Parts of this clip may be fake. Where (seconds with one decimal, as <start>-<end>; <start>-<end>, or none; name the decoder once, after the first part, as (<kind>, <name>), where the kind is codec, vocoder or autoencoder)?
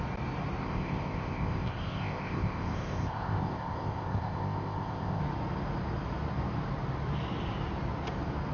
0.6-5.2 (codec, ZipCodec)